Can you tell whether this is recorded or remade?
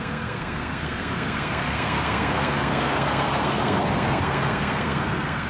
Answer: remade